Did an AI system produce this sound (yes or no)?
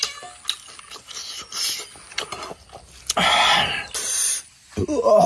no